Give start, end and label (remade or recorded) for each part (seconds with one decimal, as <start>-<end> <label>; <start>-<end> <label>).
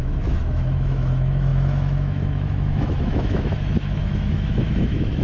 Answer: 0.0-5.2 remade